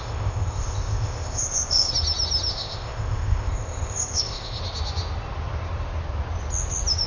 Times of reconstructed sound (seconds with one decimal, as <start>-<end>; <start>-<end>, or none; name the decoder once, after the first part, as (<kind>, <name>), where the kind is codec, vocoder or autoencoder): 0.0-1.9 (codec, ZipCodec); 2.5-4.6

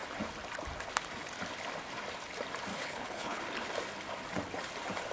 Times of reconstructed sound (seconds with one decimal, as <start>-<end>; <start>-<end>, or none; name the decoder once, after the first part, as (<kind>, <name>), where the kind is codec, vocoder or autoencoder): 2.7-3.4 (codec, HILCodec)

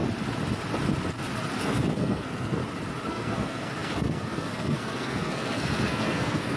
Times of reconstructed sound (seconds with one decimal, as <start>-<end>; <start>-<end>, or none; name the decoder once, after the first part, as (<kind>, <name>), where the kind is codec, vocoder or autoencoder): 1.6-2.6 (codec, SNAC); 3.1-6.6

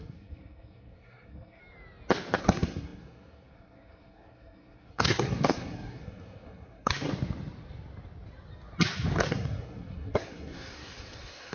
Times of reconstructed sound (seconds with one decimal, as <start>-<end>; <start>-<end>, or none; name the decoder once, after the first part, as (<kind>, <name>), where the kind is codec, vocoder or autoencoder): 0.0-1.6 (codec, SNAC); 2.4-7.1; 9.3-11.5

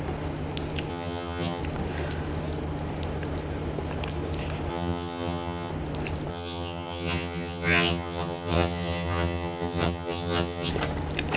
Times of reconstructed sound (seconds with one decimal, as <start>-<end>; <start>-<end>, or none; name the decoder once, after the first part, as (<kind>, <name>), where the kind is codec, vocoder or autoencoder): 0.9-1.6 (vocoder, HiFi-GAN); 4.7-5.7; 6.3-10.7

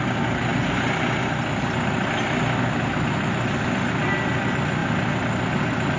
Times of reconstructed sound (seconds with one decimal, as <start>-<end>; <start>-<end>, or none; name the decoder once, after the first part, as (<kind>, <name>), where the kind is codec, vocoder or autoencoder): none

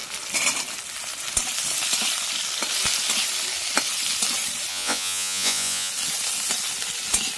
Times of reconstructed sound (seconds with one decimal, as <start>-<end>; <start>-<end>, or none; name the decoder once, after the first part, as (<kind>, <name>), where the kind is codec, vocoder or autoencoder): 4.7-5.9 (vocoder, Vocos)